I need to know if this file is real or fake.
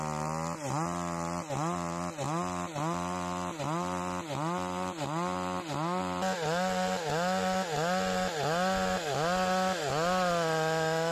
real